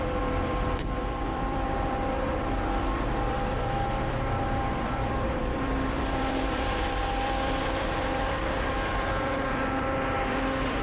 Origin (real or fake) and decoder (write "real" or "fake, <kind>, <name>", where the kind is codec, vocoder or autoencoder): fake, vocoder, BigVGAN v2